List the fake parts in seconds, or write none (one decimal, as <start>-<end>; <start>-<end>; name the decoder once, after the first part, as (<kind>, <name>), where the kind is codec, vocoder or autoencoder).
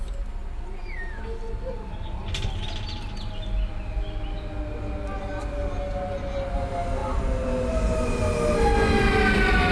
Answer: none